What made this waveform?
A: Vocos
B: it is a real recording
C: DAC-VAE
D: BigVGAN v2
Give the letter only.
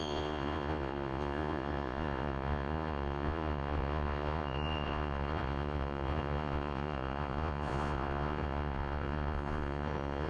A